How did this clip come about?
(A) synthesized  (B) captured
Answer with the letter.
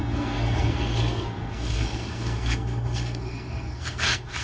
A